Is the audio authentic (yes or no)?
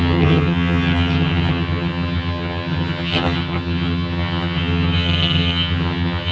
no